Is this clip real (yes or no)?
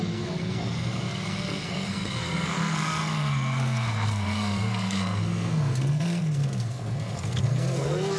no